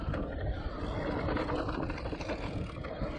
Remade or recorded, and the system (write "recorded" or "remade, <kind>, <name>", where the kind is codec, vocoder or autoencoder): recorded